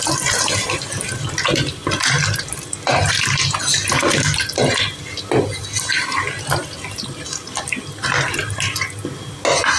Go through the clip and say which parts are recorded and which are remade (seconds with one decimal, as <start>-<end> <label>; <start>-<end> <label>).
0.0-9.8 recorded